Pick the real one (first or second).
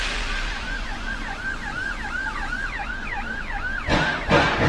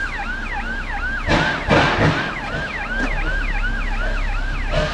second